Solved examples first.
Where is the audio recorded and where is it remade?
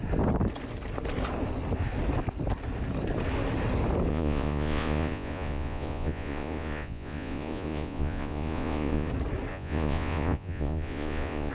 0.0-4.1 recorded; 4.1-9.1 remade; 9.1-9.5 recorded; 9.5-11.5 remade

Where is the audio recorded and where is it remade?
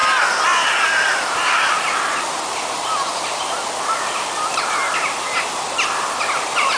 0.0-2.2 remade; 2.2-6.8 recorded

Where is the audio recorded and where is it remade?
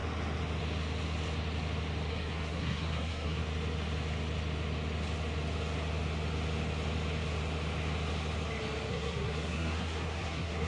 0.0-2.1 recorded; 2.1-3.4 remade; 3.4-8.9 recorded; 8.9-10.7 remade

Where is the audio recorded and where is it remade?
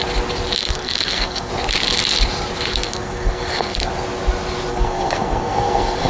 0.0-0.6 recorded; 0.6-1.5 remade; 1.5-2.7 recorded; 2.7-3.9 remade; 3.9-4.7 recorded; 4.7-6.1 remade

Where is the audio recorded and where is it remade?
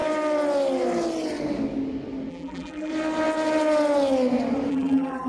0.0-2.3 recorded; 2.3-2.9 remade; 2.9-4.7 recorded; 4.7-5.3 remade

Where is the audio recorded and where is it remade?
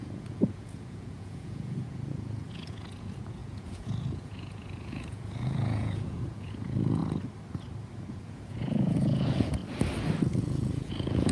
0.0-7.0 remade; 7.0-8.1 recorded; 8.1-9.6 remade; 9.6-10.3 recorded; 10.3-11.3 remade